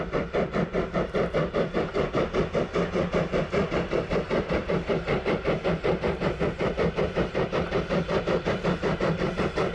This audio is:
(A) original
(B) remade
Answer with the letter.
B